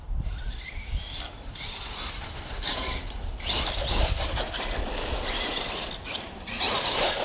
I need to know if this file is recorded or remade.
remade